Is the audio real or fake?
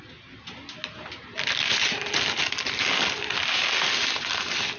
real